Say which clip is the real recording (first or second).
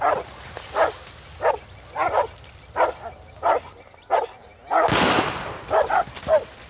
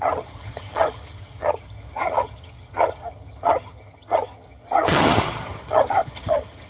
first